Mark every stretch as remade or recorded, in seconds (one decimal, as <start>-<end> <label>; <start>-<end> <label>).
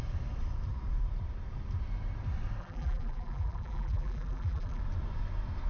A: 0.0-2.6 recorded; 2.6-4.8 remade; 4.8-5.7 recorded